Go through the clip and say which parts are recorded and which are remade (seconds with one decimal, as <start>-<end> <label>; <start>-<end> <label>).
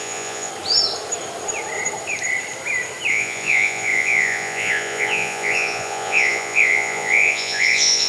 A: 0.0-0.5 remade; 0.5-3.1 recorded; 3.1-8.1 remade